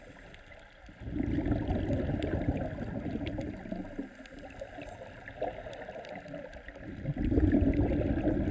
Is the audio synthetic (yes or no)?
no